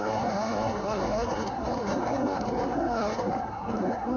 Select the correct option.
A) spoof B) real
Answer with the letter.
A